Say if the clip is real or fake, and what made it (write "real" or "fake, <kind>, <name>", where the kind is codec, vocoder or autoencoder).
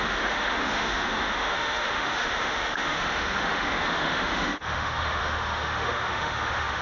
fake, autoencoder, DAC-VAE